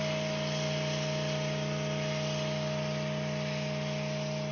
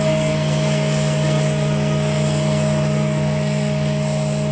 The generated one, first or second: second